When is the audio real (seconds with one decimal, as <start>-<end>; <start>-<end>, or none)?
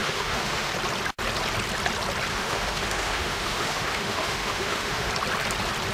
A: 0.7-2.3; 5.1-5.9